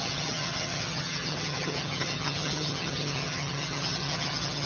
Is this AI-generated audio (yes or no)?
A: yes